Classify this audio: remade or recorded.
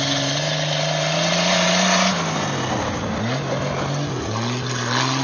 recorded